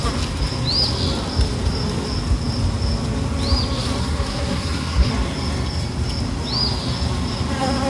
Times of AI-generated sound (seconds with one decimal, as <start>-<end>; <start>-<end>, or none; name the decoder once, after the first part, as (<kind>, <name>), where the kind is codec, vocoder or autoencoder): 4.0-5.1 (codec, SNAC)